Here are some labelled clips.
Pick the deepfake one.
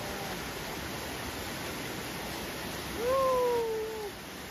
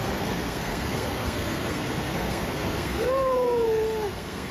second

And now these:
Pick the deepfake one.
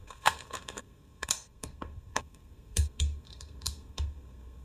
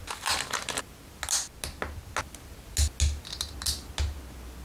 first